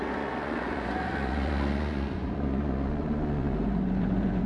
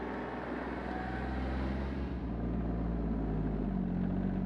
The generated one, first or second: first